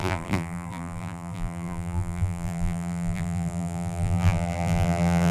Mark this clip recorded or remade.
remade